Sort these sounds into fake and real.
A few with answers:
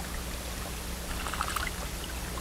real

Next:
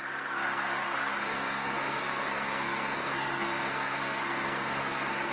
fake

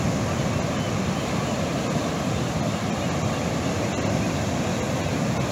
real